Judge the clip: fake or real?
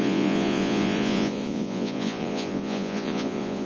fake